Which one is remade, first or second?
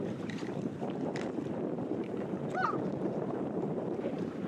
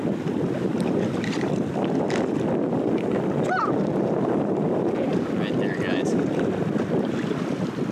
first